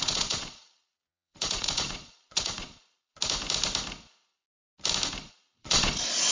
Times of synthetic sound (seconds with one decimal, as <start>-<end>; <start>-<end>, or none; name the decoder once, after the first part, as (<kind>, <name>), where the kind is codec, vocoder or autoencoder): 0.0-3.1 (vocoder, Vocos); 5.3-6.3